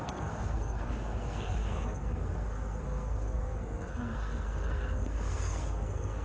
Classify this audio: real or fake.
fake